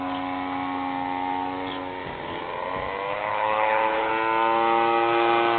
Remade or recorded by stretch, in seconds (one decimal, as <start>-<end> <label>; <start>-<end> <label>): 0.0-3.1 recorded; 3.1-4.1 remade; 4.1-5.6 recorded